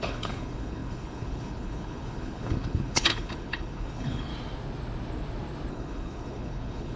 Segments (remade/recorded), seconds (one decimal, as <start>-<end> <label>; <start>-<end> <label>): 0.0-4.3 remade; 4.3-5.7 recorded; 5.7-7.0 remade